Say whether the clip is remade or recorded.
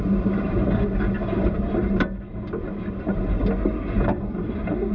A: remade